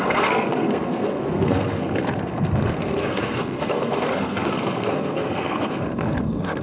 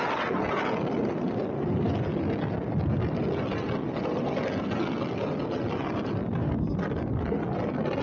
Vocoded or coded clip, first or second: first